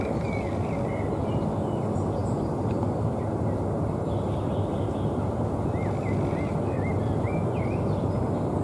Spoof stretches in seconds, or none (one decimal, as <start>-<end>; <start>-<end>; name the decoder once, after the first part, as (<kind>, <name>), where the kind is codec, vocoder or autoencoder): none